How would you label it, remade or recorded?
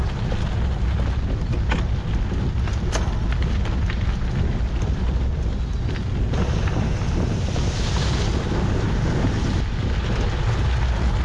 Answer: recorded